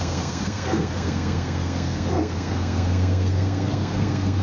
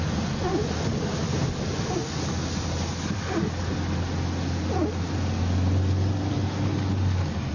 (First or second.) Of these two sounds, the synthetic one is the first